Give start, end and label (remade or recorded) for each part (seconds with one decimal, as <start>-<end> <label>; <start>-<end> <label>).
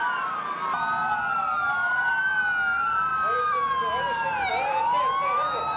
0.0-5.8 recorded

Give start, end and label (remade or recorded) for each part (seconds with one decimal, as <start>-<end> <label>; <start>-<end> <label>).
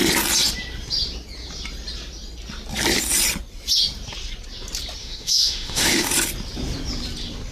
0.0-5.0 recorded; 5.0-6.1 remade; 6.1-7.5 recorded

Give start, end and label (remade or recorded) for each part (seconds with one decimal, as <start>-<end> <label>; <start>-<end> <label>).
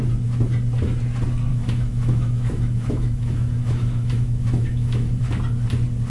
0.0-1.5 recorded; 1.5-5.2 remade; 5.2-6.1 recorded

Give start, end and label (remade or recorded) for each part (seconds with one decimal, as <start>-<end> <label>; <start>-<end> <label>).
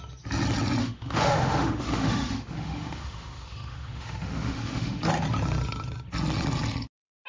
0.0-0.8 recorded; 0.8-5.0 remade; 5.0-7.3 recorded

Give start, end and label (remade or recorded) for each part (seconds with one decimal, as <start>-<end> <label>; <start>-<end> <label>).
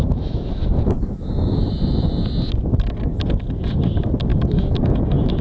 0.0-2.1 remade; 2.1-4.3 recorded; 4.3-5.4 remade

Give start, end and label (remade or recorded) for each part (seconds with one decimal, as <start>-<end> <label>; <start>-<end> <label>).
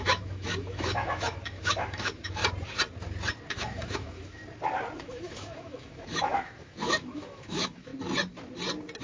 0.0-2.4 remade; 2.4-3.5 recorded; 3.5-4.4 remade; 4.4-5.0 recorded; 5.0-7.9 remade; 7.9-9.0 recorded